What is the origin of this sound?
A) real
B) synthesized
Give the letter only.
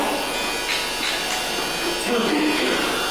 A